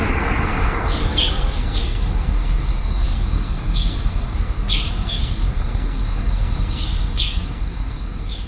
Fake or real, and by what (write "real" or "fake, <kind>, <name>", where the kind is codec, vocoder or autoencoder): fake, codec, SNAC